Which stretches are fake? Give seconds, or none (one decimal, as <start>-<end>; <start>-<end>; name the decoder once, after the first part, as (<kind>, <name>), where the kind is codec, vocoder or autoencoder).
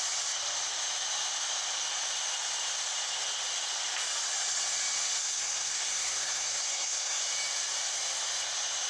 5.2-7.2 (codec, SNAC)